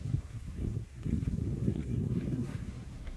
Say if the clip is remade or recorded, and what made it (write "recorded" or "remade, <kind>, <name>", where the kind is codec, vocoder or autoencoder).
remade, codec, SNAC